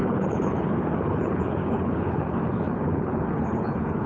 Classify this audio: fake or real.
fake